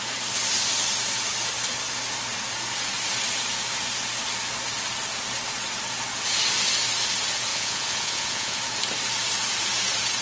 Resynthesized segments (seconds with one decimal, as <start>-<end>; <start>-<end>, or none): 7.5-8.6